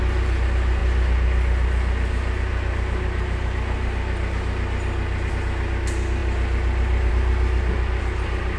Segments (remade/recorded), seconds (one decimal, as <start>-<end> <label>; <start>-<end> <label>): 0.0-8.6 recorded